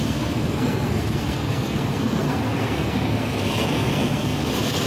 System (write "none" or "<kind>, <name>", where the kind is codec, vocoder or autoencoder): codec, SNAC